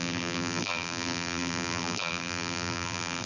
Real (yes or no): no